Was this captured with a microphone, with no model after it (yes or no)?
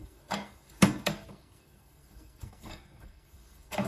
no